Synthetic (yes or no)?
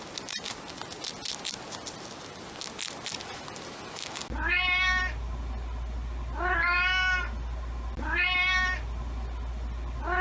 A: no